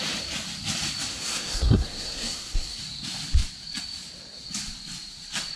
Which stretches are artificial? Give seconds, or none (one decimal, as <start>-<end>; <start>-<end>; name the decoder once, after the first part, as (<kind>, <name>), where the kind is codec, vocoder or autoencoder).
1.1-2.8 (codec, SNAC)